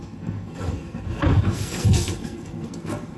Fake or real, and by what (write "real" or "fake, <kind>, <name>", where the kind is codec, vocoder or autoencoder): fake, codec, SNAC